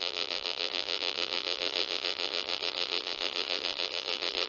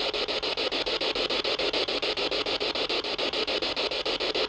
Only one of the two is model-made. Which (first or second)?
first